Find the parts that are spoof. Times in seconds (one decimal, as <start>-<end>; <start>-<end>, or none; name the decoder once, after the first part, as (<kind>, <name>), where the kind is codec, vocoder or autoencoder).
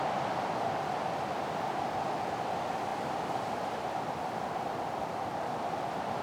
2.9-4.8 (vocoder, BigVGAN v2)